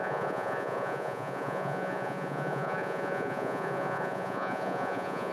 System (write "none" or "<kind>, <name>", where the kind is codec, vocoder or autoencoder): vocoder, Vocos